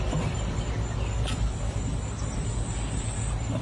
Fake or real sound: real